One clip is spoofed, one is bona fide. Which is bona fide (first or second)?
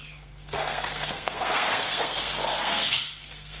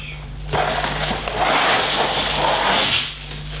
second